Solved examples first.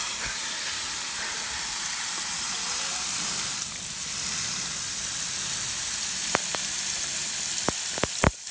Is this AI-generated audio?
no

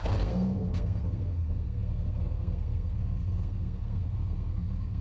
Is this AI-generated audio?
yes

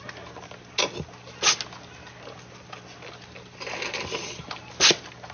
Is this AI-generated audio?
no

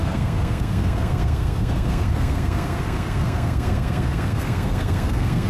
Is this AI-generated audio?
yes